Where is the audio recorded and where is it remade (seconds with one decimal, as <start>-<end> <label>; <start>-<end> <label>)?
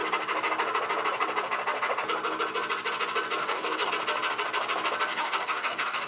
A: 0.0-3.4 recorded; 3.4-3.9 remade; 3.9-5.1 recorded; 5.1-6.1 remade